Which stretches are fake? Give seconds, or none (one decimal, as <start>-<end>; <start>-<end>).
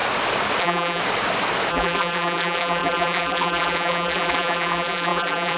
0.6-1.0; 1.7-5.6